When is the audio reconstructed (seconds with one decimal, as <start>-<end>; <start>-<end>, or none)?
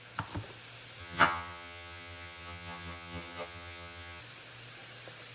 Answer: 1.0-4.2